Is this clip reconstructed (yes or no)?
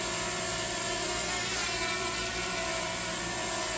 yes